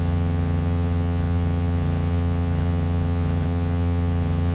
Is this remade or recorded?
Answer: remade